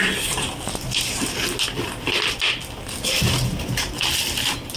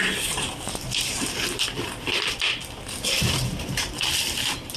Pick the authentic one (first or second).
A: first